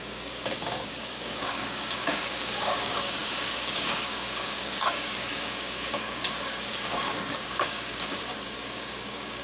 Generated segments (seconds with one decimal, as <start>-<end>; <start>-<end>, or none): 0.0-9.4